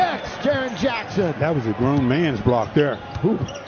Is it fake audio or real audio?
real